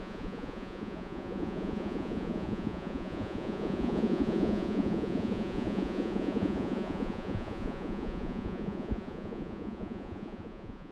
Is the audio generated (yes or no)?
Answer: yes